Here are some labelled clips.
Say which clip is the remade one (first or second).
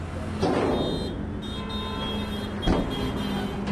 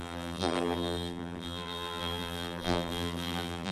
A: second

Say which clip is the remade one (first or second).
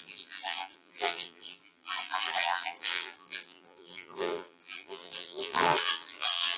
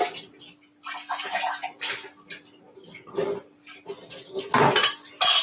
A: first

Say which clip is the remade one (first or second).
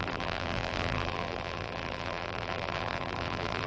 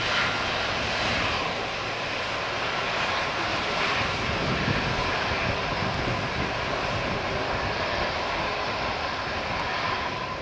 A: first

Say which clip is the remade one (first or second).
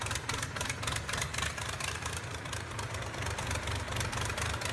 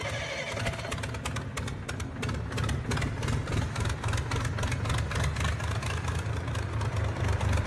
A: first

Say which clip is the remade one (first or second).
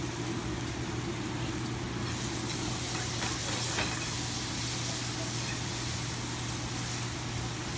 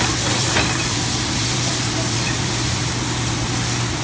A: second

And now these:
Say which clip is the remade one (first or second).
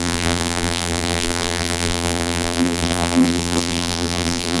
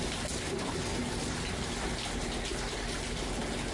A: first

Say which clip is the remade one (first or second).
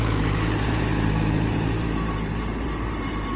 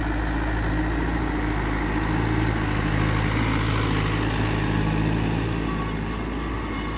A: first